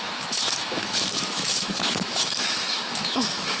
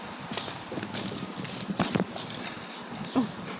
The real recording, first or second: second